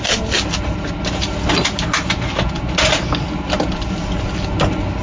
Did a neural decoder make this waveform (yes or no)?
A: no